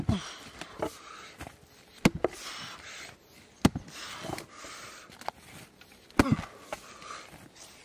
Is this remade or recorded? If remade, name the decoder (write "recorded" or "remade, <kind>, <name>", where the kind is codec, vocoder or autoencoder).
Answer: recorded